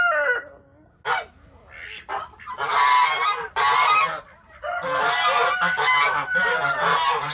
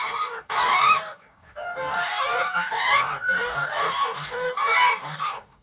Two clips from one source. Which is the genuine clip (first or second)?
first